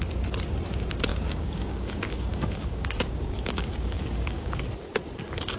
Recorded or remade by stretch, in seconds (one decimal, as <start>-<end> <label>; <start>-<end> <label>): 0.0-1.1 recorded; 1.1-4.5 remade; 4.5-5.6 recorded